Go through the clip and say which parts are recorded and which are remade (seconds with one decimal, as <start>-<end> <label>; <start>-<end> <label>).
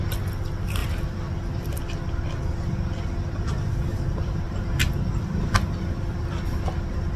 0.0-0.8 recorded; 0.8-1.8 remade; 1.8-3.9 recorded; 3.9-6.3 remade; 6.3-7.2 recorded